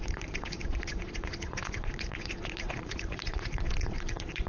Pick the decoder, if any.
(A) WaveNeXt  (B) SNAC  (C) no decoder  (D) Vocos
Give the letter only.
D